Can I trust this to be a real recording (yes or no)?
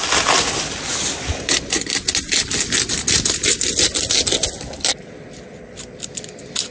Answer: yes